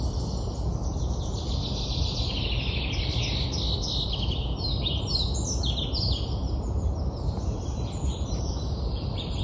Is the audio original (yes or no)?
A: yes